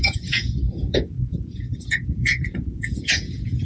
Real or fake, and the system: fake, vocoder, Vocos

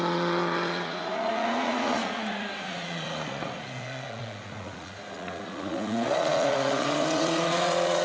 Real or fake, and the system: fake, vocoder, Vocos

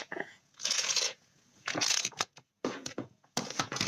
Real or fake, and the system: fake, vocoder, Vocos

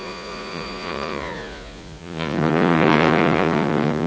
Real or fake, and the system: fake, vocoder, Vocos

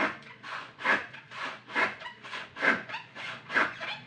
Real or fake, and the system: fake, vocoder, Vocos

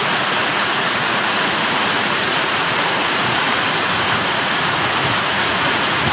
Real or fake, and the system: fake, vocoder, Vocos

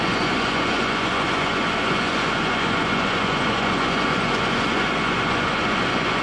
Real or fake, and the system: fake, vocoder, Vocos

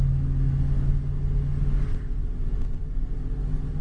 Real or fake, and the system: real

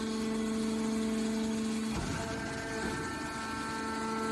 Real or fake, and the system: real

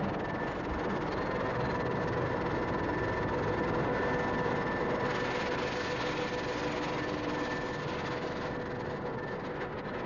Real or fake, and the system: real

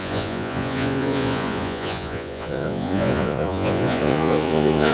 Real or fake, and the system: fake, vocoder, Vocos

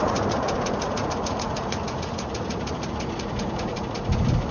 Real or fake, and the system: fake, vocoder, Vocos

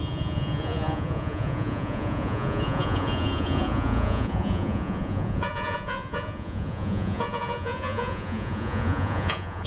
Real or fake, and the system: fake, vocoder, Vocos